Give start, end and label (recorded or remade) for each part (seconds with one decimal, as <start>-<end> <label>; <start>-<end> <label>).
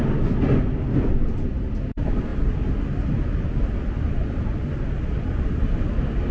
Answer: 0.0-6.3 recorded